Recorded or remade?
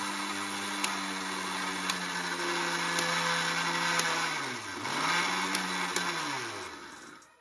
recorded